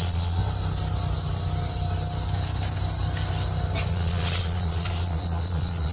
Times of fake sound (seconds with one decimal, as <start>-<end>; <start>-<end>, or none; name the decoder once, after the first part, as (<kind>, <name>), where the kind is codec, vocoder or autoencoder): 0.0-0.4 (vocoder, Vocos); 3.9-5.9